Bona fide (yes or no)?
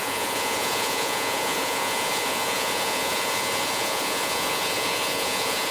no